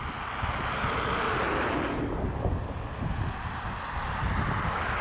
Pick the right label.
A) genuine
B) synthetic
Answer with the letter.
A